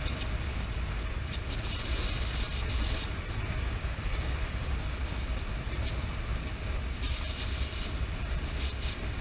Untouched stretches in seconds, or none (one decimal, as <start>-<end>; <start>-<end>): 0.0-3.8; 5.0-9.2